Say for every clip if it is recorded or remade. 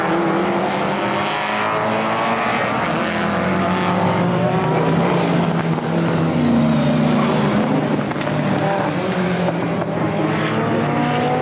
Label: recorded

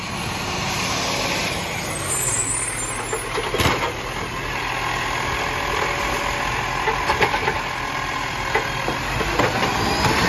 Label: recorded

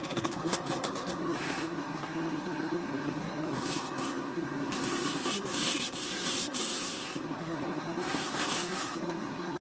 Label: remade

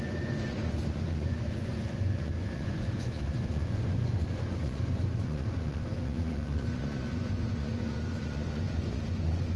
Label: remade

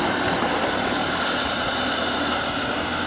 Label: recorded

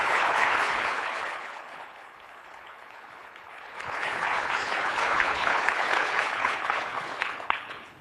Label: remade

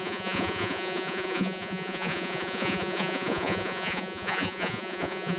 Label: remade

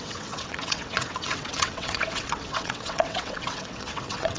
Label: remade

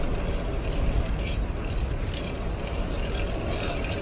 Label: recorded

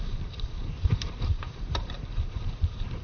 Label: remade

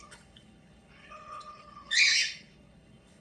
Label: remade